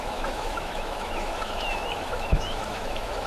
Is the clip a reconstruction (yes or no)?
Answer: yes